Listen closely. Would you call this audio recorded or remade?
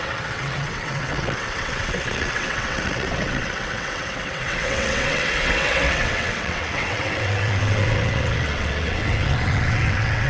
remade